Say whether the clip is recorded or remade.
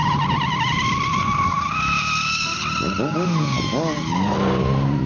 recorded